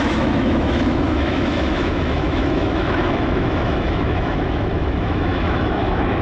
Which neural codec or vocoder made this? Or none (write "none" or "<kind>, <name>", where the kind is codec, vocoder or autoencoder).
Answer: autoencoder, DAC-VAE